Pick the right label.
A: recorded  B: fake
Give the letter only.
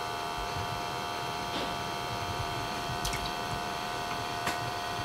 B